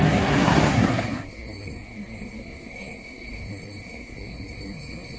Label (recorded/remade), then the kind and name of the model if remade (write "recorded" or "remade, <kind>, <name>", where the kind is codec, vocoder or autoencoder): remade, codec, SNAC